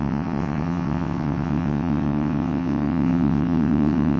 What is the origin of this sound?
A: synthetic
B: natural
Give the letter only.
A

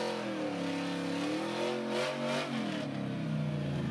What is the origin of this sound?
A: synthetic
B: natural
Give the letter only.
B